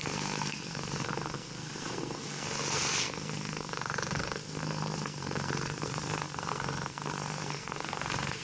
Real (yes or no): no